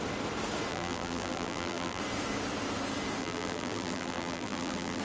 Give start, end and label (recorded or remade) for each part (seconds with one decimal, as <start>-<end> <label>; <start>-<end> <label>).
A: 0.0-0.7 recorded; 0.7-2.0 remade; 2.0-3.2 recorded; 3.2-5.0 remade